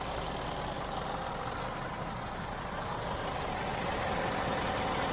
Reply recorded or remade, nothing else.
recorded